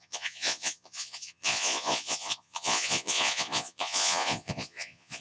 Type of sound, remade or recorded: remade